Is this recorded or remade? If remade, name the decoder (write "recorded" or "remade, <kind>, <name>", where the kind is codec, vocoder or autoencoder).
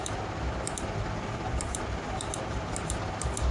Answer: recorded